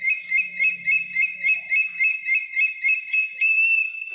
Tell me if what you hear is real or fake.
fake